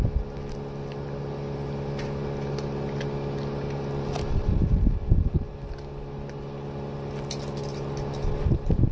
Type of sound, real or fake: real